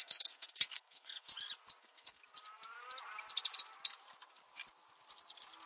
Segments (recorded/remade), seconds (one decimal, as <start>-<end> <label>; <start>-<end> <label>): 0.0-1.3 remade; 1.3-1.8 recorded; 1.8-2.2 remade; 2.2-5.7 recorded